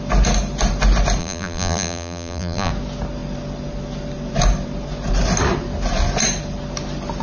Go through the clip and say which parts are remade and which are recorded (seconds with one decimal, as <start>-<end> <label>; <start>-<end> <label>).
0.0-1.2 recorded; 1.2-2.7 remade; 2.7-7.2 recorded